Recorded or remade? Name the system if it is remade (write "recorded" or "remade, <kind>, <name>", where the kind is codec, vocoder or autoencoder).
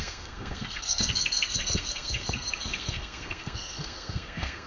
remade, codec, SNAC